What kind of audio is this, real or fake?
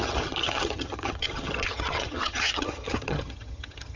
fake